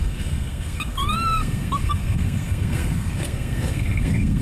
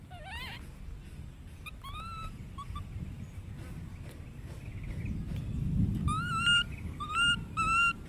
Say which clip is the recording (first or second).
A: second